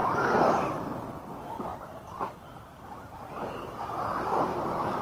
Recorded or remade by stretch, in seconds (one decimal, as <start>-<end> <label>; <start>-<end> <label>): 0.0-1.7 recorded; 1.7-3.0 remade; 3.0-4.1 recorded; 4.1-5.0 remade